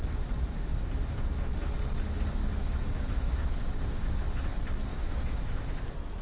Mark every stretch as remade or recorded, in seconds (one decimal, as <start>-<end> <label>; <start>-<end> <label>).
0.0-2.4 recorded; 2.4-4.2 remade; 4.2-4.9 recorded; 4.9-5.8 remade; 5.8-6.2 recorded